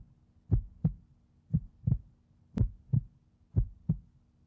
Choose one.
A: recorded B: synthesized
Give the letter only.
A